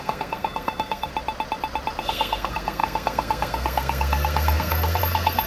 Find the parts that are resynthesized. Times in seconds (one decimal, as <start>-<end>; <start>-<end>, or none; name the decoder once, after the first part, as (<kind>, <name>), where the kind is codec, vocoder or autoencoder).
0.0-1.1 (codec, SNAC); 2.0-5.5